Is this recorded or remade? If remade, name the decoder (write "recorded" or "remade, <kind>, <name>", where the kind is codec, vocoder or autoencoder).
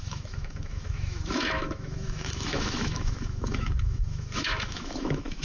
remade, autoencoder, DAC-VAE